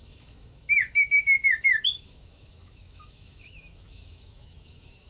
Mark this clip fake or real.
fake